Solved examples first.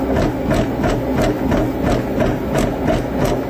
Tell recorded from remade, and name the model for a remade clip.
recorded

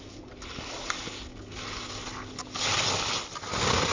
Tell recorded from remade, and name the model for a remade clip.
recorded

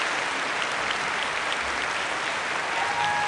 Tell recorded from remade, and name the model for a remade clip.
recorded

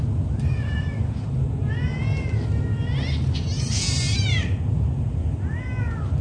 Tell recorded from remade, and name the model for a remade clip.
recorded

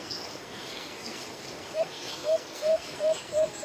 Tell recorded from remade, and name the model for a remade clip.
remade, codec, SNAC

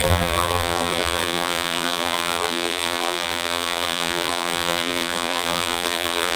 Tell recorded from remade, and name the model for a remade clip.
remade, vocoder, BigVGAN v2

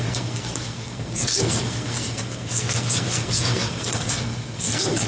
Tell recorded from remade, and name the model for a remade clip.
remade, codec, SNAC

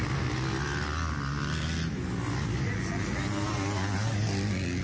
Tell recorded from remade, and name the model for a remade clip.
recorded